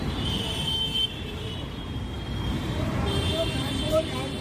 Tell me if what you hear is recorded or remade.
remade